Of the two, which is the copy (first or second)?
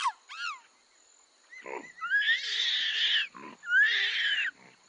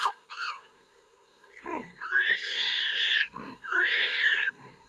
second